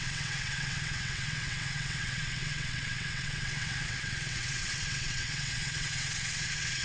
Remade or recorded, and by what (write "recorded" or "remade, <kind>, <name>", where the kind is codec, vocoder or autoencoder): remade, vocoder, WaveNeXt